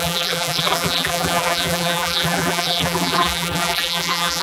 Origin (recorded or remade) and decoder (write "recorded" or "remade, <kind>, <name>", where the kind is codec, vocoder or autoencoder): remade, vocoder, BigVGAN v2